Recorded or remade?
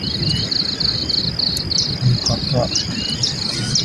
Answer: recorded